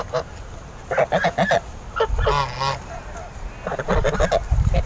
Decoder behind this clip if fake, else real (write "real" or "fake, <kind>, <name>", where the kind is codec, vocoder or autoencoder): real